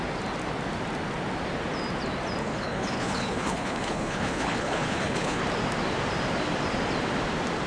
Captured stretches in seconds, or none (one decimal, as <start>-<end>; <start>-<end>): 0.0-2.4; 5.4-7.7